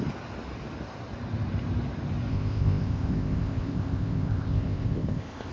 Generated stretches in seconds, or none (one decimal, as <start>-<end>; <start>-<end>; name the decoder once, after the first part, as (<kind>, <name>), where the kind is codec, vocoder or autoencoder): 2.3-5.5 (codec, ZipCodec)

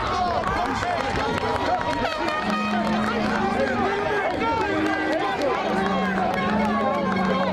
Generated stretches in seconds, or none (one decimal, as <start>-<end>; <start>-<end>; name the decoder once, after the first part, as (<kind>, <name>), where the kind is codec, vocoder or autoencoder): none

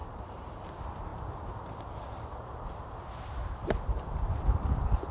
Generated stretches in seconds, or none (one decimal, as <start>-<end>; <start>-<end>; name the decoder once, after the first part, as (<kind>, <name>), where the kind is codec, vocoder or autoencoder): 0.0-0.5 (vocoder, BigVGAN v2); 1.1-4.2

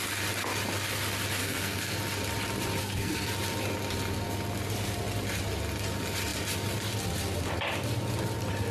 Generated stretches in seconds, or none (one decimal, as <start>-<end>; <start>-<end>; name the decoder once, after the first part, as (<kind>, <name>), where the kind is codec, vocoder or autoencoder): 1.4-2.0 (codec, SNAC); 2.8-3.3

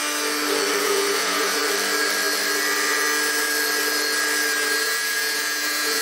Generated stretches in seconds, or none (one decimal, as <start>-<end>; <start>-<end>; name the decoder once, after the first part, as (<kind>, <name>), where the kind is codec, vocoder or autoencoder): 0.8-1.6 (vocoder, Vocos); 4.8-6.0